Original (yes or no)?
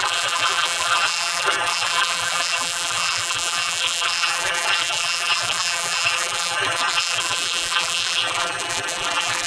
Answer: no